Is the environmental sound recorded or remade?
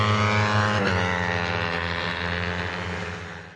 recorded